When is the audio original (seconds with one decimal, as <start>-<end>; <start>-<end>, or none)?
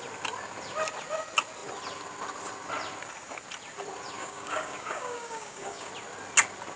0.0-4.2; 5.9-6.8